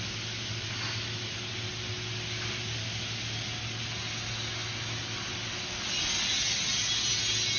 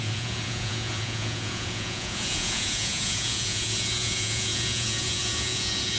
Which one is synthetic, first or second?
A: second